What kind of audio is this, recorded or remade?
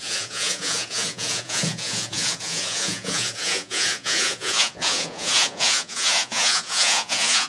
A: remade